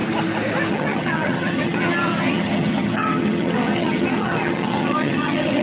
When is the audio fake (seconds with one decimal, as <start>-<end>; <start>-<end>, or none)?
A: 0.7-5.6